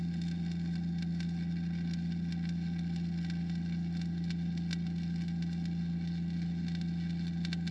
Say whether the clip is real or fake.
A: real